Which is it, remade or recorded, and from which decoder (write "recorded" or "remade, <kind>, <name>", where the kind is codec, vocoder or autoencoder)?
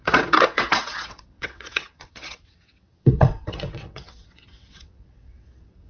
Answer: remade, vocoder, WaveNeXt